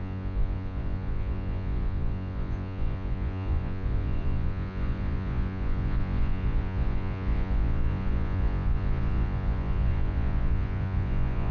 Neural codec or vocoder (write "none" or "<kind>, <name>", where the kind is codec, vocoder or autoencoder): vocoder, Vocos